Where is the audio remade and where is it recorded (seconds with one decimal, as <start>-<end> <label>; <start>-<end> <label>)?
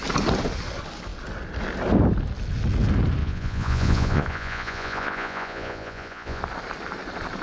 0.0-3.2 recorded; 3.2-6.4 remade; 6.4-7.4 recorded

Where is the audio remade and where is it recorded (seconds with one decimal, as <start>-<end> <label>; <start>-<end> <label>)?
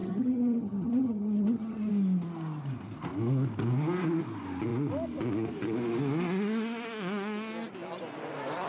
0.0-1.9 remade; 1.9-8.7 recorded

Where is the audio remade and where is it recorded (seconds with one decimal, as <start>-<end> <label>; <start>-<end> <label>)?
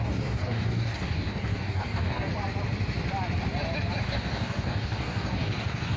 0.0-2.3 remade; 2.3-4.0 recorded; 4.0-6.0 remade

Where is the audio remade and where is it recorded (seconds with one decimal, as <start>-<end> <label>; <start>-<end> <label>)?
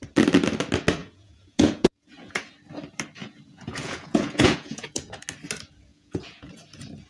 0.0-1.0 recorded; 1.0-2.4 remade; 2.4-3.2 recorded; 3.2-5.1 remade; 5.1-5.9 recorded; 5.9-6.5 remade; 6.5-7.1 recorded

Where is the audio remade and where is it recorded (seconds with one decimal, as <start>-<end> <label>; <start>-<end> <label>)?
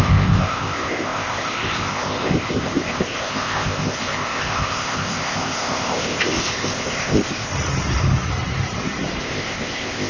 0.0-7.5 remade; 7.5-9.2 recorded; 9.2-10.1 remade